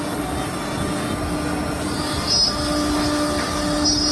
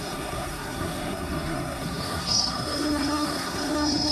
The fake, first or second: second